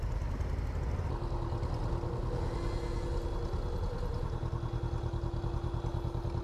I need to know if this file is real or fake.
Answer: real